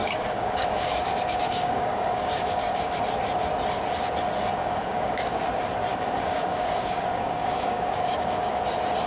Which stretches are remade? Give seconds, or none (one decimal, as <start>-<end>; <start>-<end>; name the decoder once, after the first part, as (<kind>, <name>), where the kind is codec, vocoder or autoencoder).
0.0-3.0 (codec, DAC); 4.6-5.4; 5.9-8.5